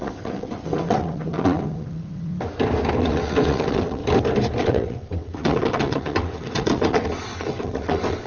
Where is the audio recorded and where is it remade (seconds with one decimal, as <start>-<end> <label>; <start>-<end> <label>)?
0.0-2.3 remade; 2.3-3.0 recorded; 3.0-4.0 remade; 4.0-4.6 recorded; 4.6-8.3 remade

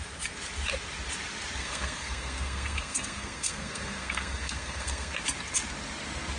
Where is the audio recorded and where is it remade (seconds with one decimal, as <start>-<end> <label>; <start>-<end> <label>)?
0.0-1.6 recorded; 1.6-5.1 remade; 5.1-6.4 recorded

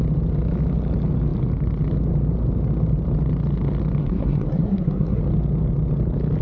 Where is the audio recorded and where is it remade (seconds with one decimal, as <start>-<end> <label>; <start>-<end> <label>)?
0.0-4.0 recorded; 4.0-5.2 remade; 5.2-6.4 recorded

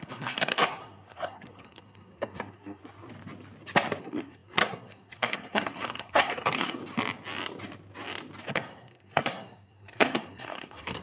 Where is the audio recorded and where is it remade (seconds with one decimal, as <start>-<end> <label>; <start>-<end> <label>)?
0.0-2.8 remade; 2.8-4.0 recorded; 4.0-6.8 remade; 6.8-8.5 recorded; 8.5-11.0 remade

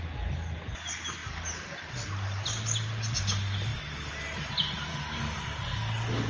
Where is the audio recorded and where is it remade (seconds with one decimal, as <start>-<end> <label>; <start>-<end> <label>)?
0.0-4.9 recorded; 4.9-6.3 remade